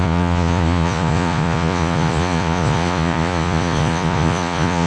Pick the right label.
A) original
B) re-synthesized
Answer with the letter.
B